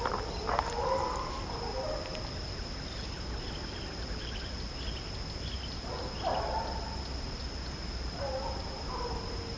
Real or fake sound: real